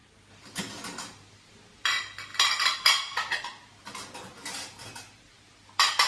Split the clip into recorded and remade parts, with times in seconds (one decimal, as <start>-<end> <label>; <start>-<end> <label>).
0.0-6.1 recorded